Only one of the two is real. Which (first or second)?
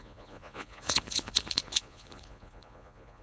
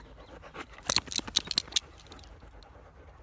second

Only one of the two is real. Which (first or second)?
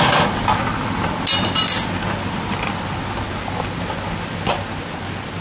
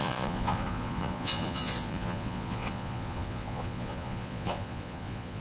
first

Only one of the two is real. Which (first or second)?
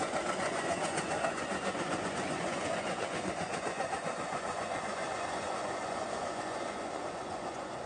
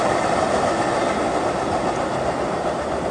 second